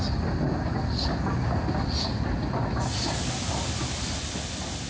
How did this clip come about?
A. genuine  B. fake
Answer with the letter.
A